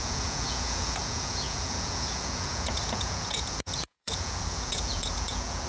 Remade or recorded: remade